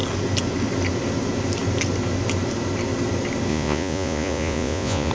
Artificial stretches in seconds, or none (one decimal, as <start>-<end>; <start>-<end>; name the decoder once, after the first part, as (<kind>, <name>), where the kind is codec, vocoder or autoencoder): 3.5-5.1 (vocoder, Vocos)